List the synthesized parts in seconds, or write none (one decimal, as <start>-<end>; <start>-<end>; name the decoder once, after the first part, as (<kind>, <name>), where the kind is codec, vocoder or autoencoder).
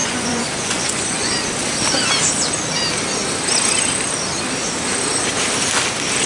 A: 0.0-1.3 (vocoder, Vocos)